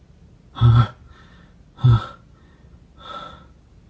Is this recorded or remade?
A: recorded